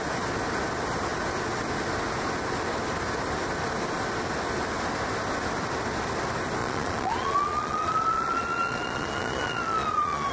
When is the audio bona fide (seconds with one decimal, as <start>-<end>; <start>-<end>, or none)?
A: 0.0-6.6